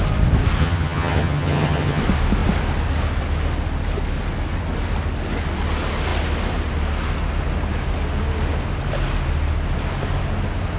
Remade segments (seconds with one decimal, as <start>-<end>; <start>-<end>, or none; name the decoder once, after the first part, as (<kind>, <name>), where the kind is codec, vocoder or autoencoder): 0.6-2.0 (vocoder, HiFi-GAN)